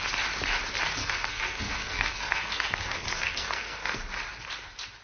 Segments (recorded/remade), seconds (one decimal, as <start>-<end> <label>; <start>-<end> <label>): 0.0-1.0 recorded; 1.0-4.0 remade; 4.0-5.0 recorded